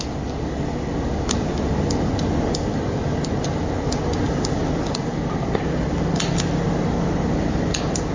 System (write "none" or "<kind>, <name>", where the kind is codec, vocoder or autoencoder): none